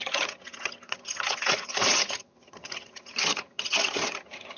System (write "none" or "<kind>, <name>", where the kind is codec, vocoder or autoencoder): vocoder, HiFi-GAN